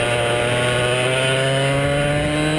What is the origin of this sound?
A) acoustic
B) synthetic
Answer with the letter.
A